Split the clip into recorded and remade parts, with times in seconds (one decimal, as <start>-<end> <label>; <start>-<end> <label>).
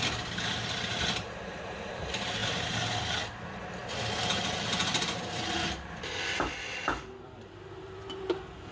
0.0-3.8 remade; 3.8-4.4 recorded; 4.4-8.7 remade